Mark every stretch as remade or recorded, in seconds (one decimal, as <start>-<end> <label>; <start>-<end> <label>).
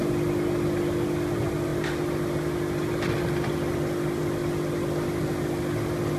0.0-6.2 recorded